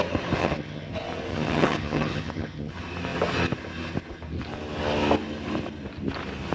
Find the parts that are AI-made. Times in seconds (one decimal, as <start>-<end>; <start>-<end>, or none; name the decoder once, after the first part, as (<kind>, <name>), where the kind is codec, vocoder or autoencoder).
0.4-0.9 (vocoder, HiFi-GAN); 1.3-2.7

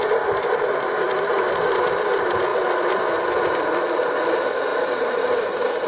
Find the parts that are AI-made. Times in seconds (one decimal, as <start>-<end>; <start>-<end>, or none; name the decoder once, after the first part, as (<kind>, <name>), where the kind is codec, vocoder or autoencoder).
none